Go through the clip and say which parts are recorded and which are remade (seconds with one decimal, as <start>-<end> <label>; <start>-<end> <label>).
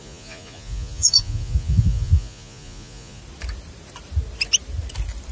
0.0-3.2 remade; 3.2-5.3 recorded